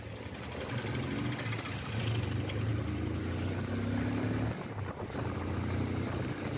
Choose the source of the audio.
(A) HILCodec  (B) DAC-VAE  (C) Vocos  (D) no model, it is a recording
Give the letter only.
D